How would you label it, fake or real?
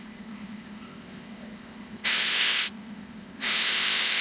fake